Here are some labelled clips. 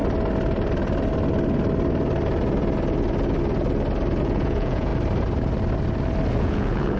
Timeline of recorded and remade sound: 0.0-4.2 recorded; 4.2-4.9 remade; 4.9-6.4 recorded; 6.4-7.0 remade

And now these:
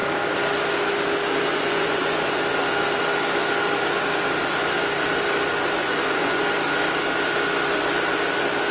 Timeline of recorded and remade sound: 0.0-1.5 recorded; 1.5-2.4 remade; 2.4-5.8 recorded; 5.8-6.4 remade; 6.4-8.7 recorded

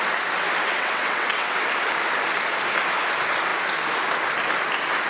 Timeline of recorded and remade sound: 0.0-0.6 recorded; 0.6-1.6 remade; 1.6-5.1 recorded

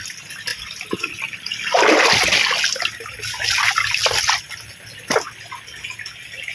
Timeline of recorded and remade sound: 0.0-6.5 recorded

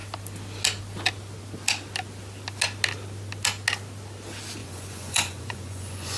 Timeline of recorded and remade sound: 0.0-4.6 recorded; 4.6-6.2 remade